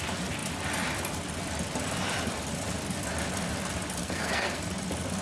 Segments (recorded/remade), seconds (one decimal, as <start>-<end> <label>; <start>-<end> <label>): 0.0-4.0 recorded; 4.0-4.6 remade; 4.6-5.2 recorded